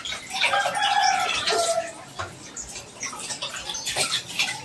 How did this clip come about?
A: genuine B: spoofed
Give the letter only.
A